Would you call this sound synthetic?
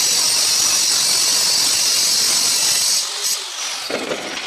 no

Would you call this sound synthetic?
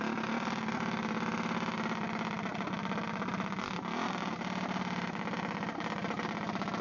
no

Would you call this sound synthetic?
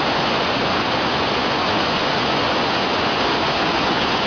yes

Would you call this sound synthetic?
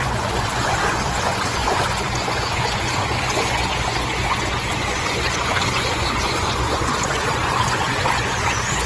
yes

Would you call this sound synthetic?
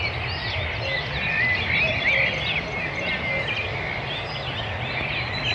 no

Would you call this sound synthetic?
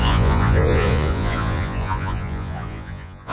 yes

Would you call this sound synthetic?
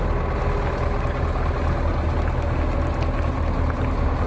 no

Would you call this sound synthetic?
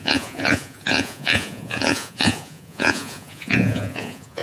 yes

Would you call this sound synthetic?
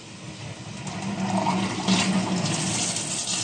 no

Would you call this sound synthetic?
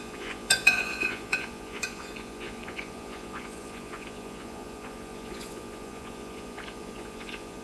yes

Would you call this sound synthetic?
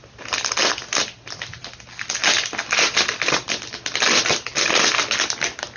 no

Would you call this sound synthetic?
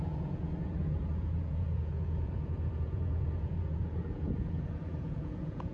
yes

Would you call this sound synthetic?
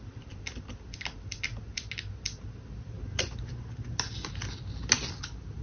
no